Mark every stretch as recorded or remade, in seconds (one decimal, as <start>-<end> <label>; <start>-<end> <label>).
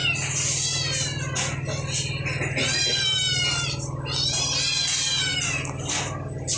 0.0-6.6 recorded